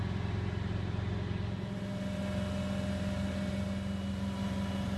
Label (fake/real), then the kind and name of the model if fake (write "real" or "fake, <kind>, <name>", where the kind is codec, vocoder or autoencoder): real